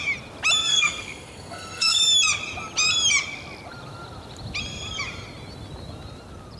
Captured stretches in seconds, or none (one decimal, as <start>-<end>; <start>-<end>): 0.0-0.7; 2.0-6.6